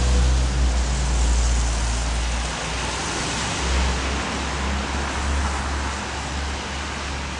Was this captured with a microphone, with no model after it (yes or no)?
yes